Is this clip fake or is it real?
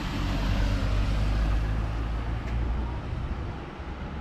real